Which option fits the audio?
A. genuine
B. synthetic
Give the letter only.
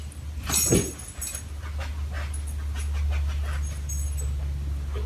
A